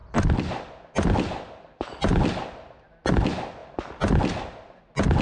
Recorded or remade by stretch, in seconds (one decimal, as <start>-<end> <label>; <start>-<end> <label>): 0.0-5.2 recorded